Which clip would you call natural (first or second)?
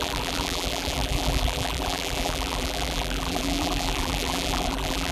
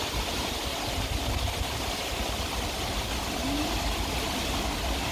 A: second